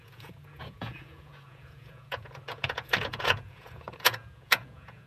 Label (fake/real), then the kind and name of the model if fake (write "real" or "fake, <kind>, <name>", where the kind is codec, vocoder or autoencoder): fake, vocoder, Vocos